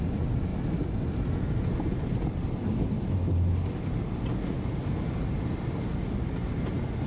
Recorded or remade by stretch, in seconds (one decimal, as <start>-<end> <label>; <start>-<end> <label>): 0.0-7.1 recorded

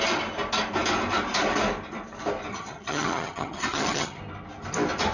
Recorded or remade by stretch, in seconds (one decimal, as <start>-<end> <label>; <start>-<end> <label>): 0.0-2.5 recorded; 2.5-4.2 remade; 4.2-5.1 recorded

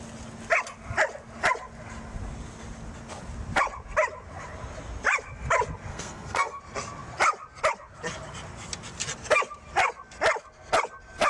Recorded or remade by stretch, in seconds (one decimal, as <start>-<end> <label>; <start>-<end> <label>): 0.0-5.9 recorded; 5.9-6.6 remade; 6.6-11.3 recorded

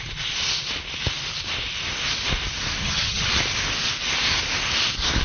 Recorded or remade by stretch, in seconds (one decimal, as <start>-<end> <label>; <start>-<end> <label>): 0.0-2.8 recorded; 2.8-3.3 remade; 3.3-5.2 recorded

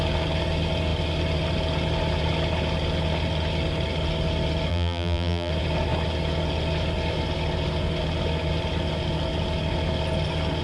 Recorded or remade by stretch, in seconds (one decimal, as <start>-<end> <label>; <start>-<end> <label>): 0.0-4.7 recorded; 4.7-5.5 remade; 5.5-10.6 recorded

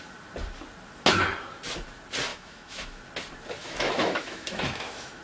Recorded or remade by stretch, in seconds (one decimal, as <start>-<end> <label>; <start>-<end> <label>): 0.0-2.3 recorded; 2.3-3.0 remade; 3.0-3.6 recorded; 3.6-5.2 remade